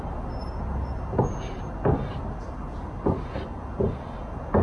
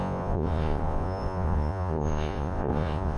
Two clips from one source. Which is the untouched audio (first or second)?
first